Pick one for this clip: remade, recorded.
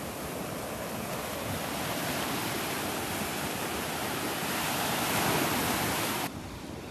remade